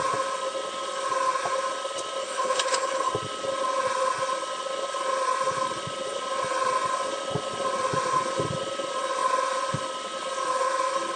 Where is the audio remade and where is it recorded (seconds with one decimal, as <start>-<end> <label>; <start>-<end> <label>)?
0.0-2.2 recorded; 2.2-3.1 remade; 3.1-11.2 recorded